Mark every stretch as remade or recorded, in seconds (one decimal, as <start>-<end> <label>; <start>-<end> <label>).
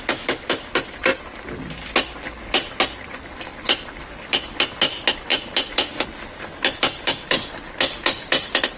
0.0-8.8 recorded